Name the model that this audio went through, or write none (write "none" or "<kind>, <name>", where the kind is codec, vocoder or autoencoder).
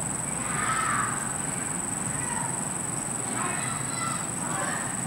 none